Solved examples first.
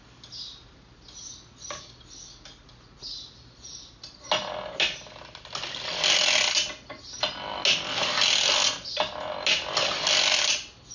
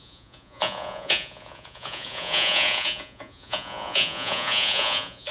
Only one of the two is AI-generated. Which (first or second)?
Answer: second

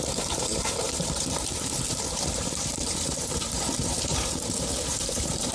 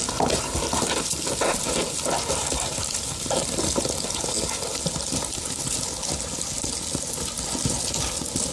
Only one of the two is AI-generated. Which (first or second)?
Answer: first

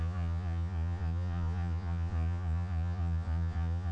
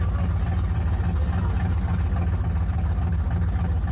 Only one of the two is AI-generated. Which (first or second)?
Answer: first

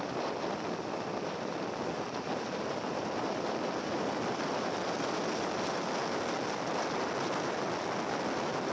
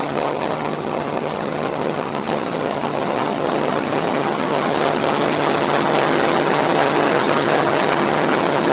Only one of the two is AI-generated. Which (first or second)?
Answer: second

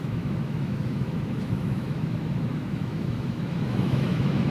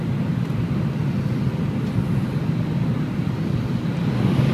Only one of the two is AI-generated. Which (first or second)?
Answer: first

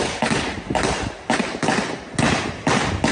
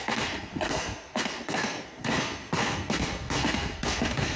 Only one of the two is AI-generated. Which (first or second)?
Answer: second